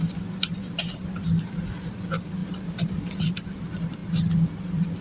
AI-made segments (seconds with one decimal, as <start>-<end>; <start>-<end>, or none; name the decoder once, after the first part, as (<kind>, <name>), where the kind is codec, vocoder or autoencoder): none